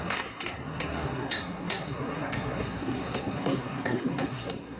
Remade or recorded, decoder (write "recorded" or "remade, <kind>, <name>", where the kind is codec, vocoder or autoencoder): remade, codec, SNAC